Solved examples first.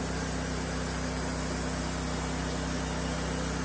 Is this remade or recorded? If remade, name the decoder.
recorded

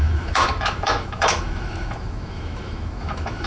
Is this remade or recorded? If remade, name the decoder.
remade, autoencoder, DAC-VAE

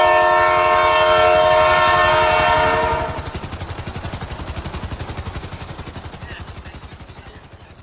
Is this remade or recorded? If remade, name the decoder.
recorded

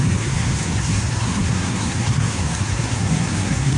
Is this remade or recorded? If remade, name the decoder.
remade, codec, SNAC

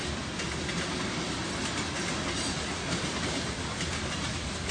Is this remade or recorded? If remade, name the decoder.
recorded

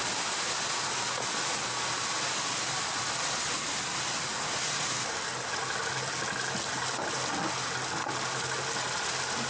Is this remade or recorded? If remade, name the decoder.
recorded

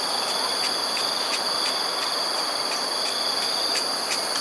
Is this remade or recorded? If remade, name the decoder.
recorded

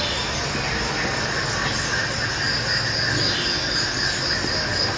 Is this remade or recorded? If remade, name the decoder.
recorded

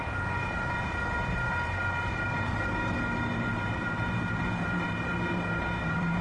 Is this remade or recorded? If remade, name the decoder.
remade, vocoder, BigVGAN v2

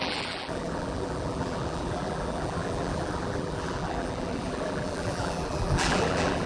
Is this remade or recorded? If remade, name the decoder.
remade, vocoder, BigVGAN v2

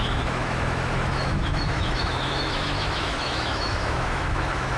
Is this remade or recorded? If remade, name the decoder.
remade, autoencoder, DAC-VAE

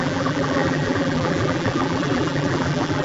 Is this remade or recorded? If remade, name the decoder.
remade, vocoder, BigVGAN v2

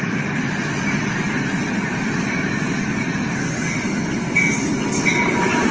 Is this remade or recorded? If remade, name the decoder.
recorded